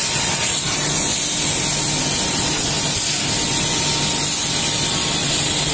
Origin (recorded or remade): recorded